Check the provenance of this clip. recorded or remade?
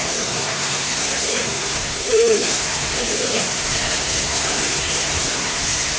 remade